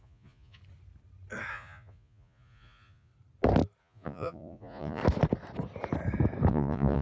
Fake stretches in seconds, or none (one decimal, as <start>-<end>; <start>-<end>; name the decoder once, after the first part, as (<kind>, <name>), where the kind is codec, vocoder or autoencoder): 0.0-0.6 (vocoder, Vocos); 1.5-3.1; 3.8-5.0; 6.5-7.0